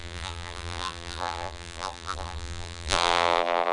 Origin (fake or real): fake